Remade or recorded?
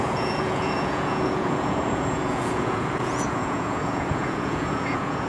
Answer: remade